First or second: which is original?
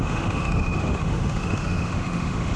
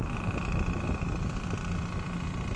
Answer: second